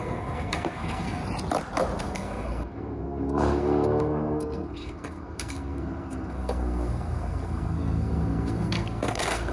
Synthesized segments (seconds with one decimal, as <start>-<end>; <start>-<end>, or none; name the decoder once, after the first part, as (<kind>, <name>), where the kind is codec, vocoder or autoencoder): 0.0-1.2 (codec, SNAC); 2.0-9.5